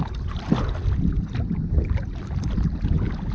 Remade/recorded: recorded